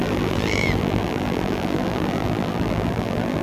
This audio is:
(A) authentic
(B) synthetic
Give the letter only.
B